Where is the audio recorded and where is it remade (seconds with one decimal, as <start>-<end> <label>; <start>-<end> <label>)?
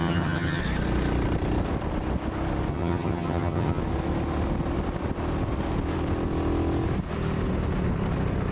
0.0-0.6 remade; 0.6-2.7 recorded; 2.7-3.8 remade; 3.8-8.5 recorded